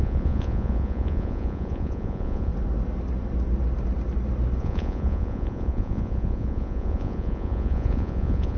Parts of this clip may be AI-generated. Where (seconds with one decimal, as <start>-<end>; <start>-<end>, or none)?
0.0-2.5; 4.6-8.6